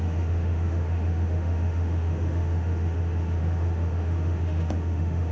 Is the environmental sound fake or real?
fake